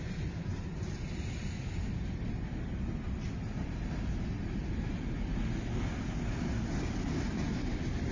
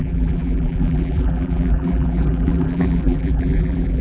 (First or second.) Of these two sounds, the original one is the first